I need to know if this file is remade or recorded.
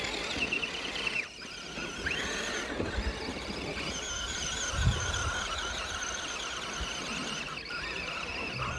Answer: recorded